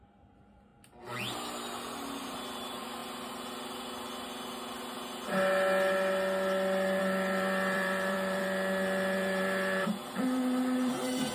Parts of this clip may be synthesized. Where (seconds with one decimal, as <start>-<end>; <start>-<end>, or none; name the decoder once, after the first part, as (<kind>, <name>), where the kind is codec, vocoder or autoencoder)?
0.0-0.7 (vocoder, BigVGAN v2); 2.2-3.0; 7.0-11.3